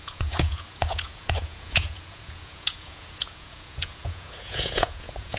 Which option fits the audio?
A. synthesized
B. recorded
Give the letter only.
A